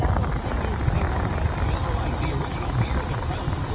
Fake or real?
real